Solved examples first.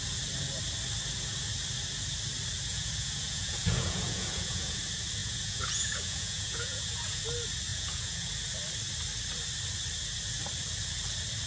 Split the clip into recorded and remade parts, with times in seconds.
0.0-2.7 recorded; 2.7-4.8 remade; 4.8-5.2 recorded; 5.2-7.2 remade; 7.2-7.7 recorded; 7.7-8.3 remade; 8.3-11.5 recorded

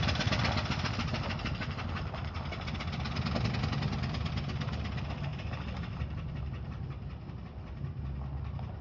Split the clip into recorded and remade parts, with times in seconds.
0.0-5.3 recorded; 5.3-7.3 remade; 7.3-8.8 recorded

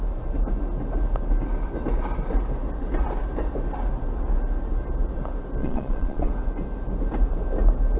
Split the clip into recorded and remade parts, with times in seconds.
0.0-5.6 recorded; 5.6-6.3 remade; 6.3-8.0 recorded

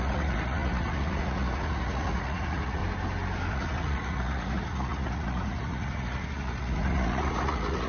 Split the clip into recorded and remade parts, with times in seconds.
0.0-2.8 remade; 2.8-3.5 recorded; 3.5-7.9 remade

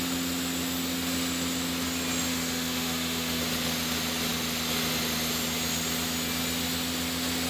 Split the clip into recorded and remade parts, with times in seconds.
0.0-2.3 recorded; 2.3-3.4 remade; 3.4-7.5 recorded

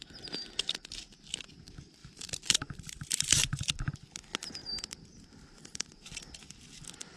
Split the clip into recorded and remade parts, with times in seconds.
0.0-2.0 recorded; 2.0-3.9 remade; 3.9-4.6 recorded; 4.6-5.9 remade; 5.9-7.2 recorded

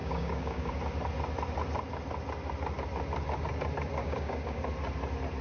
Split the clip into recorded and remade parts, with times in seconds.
0.0-0.7 remade; 0.7-4.0 recorded; 4.0-4.6 remade; 4.6-5.4 recorded